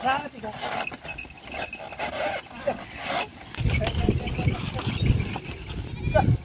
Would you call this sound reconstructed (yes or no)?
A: no